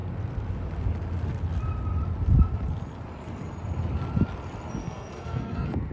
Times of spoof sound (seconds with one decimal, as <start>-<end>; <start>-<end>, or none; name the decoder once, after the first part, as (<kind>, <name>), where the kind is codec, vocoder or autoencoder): 4.8-5.9 (codec, SNAC)